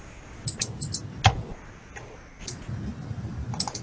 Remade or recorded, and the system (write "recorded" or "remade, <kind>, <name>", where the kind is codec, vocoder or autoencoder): recorded